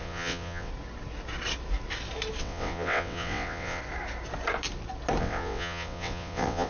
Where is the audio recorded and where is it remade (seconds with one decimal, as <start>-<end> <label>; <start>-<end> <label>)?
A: 0.0-0.7 remade; 0.7-2.4 recorded; 2.4-3.8 remade; 3.8-5.2 recorded; 5.2-6.7 remade